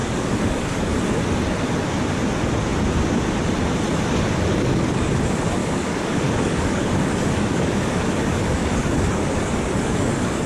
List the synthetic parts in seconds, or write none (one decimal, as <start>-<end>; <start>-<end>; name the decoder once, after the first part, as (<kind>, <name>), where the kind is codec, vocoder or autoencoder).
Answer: 0.0-0.9 (codec, DAC); 4.5-5.1; 5.6-10.5